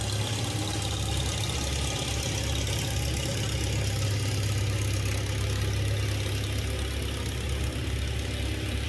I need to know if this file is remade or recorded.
recorded